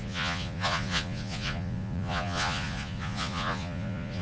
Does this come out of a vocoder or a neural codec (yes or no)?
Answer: yes